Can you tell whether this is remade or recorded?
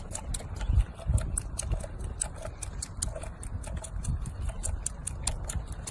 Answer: recorded